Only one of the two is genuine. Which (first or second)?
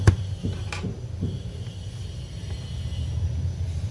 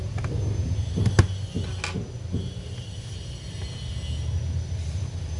second